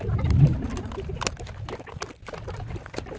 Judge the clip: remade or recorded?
recorded